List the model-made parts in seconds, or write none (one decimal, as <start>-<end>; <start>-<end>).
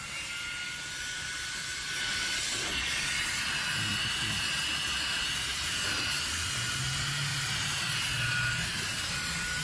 7.3-8.7